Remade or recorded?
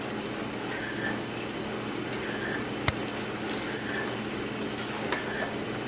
recorded